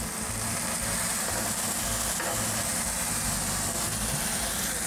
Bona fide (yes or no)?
yes